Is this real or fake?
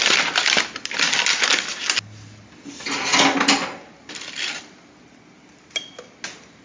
real